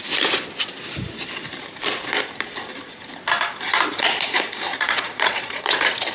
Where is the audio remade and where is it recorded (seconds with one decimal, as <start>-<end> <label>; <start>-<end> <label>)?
0.0-4.7 recorded; 4.7-5.6 remade; 5.6-6.1 recorded